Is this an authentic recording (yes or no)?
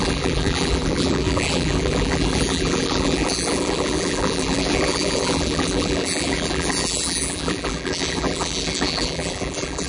no